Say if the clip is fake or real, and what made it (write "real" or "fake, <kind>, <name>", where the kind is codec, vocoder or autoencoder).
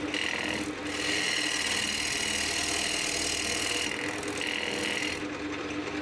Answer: real